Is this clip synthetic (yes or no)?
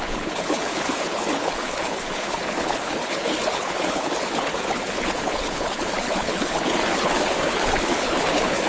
yes